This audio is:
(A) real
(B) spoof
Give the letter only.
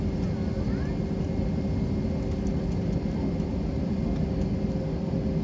A